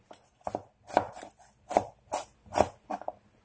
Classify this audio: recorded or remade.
recorded